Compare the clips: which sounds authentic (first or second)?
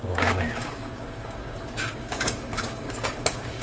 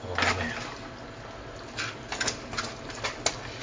second